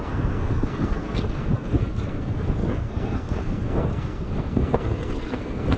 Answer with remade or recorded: remade